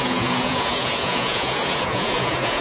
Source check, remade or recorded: remade